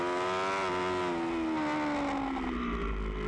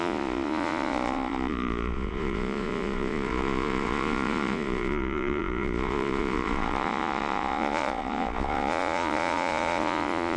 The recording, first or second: first